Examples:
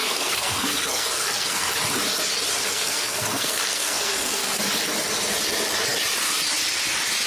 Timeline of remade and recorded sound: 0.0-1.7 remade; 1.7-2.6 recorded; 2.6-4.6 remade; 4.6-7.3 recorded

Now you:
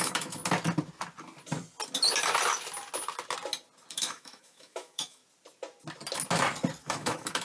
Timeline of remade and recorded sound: 0.0-0.4 remade; 0.4-3.9 recorded; 3.9-5.2 remade; 5.2-6.8 recorded; 6.8-7.4 remade

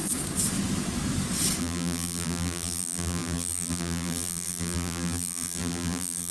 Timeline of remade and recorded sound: 0.0-1.6 recorded; 1.6-6.3 remade

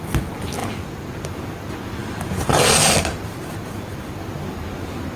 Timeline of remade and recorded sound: 0.0-2.0 recorded; 2.0-2.5 remade; 2.5-5.2 recorded

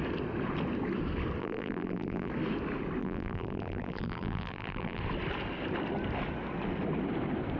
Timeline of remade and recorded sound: 0.0-1.4 recorded; 1.4-2.3 remade; 2.3-3.0 recorded; 3.0-5.0 remade; 5.0-7.6 recorded

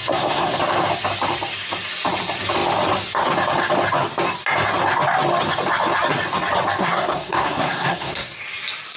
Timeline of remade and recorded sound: 0.0-0.6 remade; 0.6-6.8 recorded; 6.8-8.4 remade; 8.4-9.0 recorded

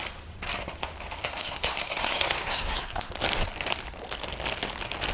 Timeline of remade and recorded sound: 0.0-1.2 recorded; 1.2-3.1 remade; 3.1-5.1 recorded